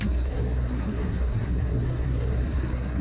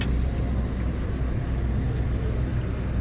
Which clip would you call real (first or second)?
second